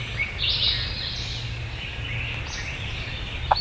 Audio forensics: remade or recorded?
recorded